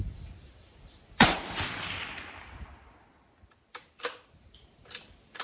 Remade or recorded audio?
recorded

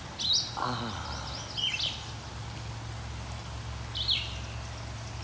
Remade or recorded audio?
recorded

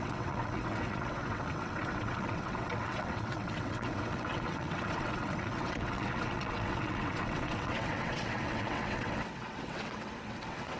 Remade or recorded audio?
remade